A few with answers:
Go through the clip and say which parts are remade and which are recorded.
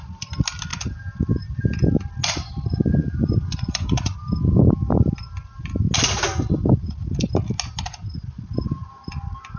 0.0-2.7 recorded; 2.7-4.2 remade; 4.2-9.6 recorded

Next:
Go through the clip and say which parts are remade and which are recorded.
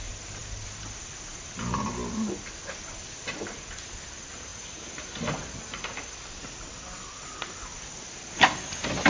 0.0-9.1 recorded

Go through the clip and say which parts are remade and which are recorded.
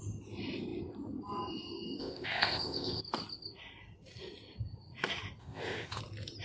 0.0-2.0 recorded; 2.0-3.0 remade; 3.0-5.4 recorded; 5.4-6.0 remade; 6.0-6.4 recorded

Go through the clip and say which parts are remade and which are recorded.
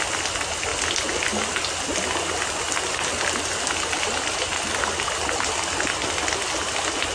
0.0-7.1 recorded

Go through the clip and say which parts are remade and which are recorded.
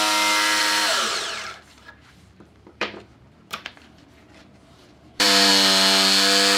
0.0-0.6 recorded; 0.6-3.7 remade; 3.7-4.4 recorded; 4.4-5.5 remade; 5.5-6.6 recorded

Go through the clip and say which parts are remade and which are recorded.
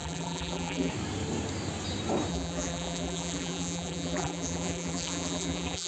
0.0-0.9 remade; 0.9-2.3 recorded; 2.3-5.9 remade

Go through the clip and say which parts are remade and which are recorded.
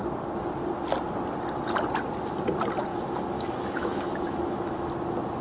0.0-2.9 recorded; 2.9-4.9 remade; 4.9-5.4 recorded